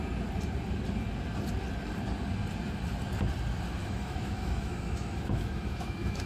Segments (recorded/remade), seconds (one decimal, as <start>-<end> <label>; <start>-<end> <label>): 0.0-3.8 recorded; 3.8-6.3 remade